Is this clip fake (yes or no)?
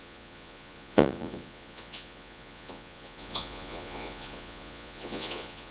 yes